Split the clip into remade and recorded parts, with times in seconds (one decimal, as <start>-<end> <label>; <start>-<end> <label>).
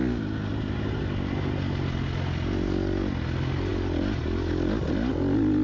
0.0-0.5 recorded; 0.5-1.0 remade; 1.0-5.6 recorded